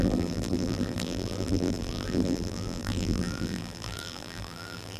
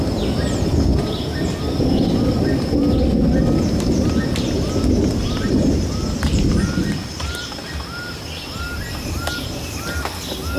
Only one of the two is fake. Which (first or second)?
first